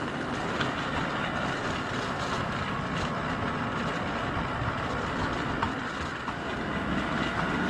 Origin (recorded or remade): recorded